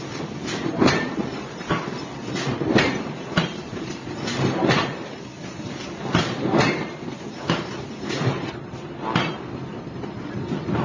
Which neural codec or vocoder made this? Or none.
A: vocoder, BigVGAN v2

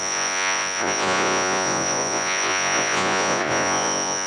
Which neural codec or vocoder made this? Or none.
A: vocoder, Vocos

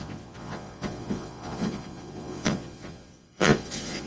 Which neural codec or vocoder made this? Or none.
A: vocoder, Vocos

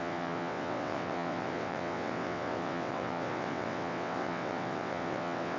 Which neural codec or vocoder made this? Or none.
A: vocoder, WaveNeXt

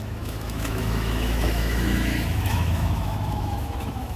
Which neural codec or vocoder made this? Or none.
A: autoencoder, DAC-VAE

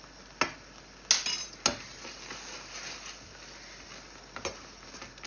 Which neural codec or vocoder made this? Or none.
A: none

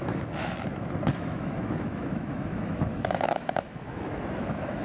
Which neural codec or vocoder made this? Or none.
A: autoencoder, DAC-VAE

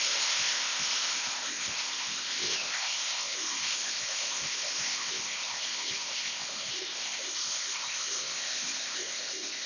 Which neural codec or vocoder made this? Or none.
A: codec, ZipCodec